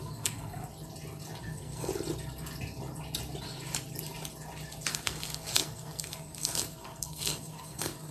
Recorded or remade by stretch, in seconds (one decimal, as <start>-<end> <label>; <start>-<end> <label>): 0.0-0.7 remade; 0.7-1.4 recorded; 1.4-1.9 remade; 1.9-4.9 recorded; 4.9-8.1 remade